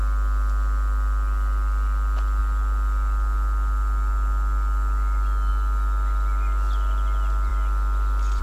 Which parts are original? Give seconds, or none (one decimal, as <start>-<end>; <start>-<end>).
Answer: 0.0-8.4